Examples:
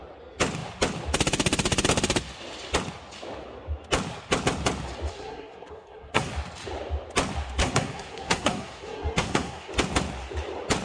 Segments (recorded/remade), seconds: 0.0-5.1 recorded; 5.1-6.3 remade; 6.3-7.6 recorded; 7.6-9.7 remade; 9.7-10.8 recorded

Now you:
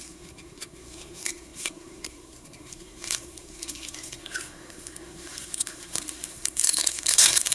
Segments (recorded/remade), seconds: 0.0-7.5 remade

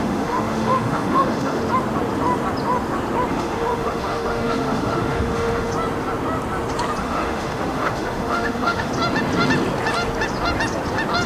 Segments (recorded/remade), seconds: 0.0-1.6 remade; 1.6-3.3 recorded; 3.3-5.7 remade; 5.7-7.0 recorded; 7.0-8.9 remade; 8.9-11.3 recorded

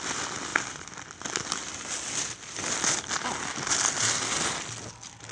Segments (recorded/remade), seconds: 0.0-5.3 recorded

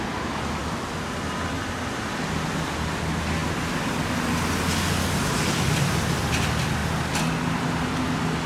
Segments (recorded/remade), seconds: 0.0-8.5 recorded